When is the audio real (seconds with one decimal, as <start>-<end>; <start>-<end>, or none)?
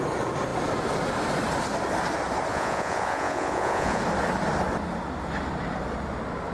0.0-2.5; 4.0-6.5